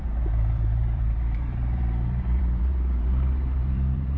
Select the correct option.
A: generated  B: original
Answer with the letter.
A